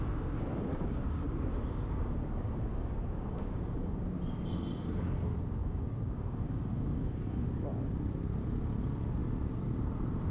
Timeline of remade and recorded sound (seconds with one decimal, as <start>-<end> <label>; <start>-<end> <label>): 0.0-0.5 recorded; 0.5-4.0 remade; 4.0-5.6 recorded; 5.6-7.4 remade; 7.4-10.3 recorded